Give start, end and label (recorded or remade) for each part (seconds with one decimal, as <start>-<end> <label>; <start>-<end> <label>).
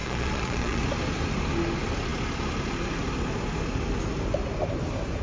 0.0-0.8 remade; 0.8-5.2 recorded